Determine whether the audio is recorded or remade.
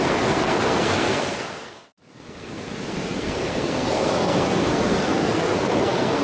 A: remade